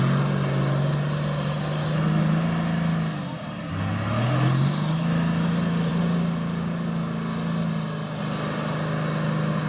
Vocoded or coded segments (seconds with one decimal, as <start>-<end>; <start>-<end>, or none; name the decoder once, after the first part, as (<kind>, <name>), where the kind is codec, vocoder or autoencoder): none